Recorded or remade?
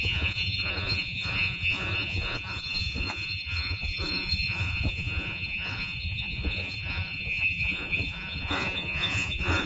remade